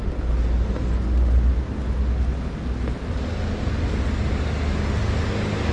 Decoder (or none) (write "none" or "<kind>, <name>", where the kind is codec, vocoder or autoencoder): none